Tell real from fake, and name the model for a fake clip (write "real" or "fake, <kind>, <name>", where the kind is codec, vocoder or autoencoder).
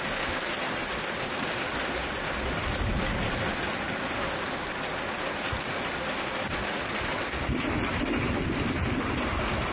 real